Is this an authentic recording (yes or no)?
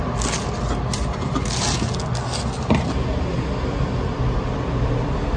yes